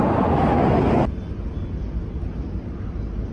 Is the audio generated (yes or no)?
no